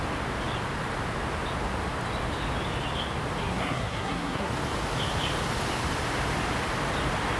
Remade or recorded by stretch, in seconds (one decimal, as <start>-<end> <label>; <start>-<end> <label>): 0.0-3.4 recorded; 3.4-4.5 remade; 4.5-7.4 recorded